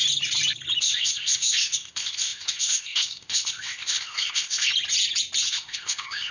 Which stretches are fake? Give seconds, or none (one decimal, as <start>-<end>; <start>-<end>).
0.8-4.7; 5.5-6.3